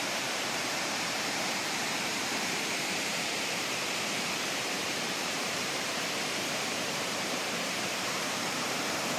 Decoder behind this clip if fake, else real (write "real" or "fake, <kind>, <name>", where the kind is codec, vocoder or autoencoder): fake, vocoder, BigVGAN v2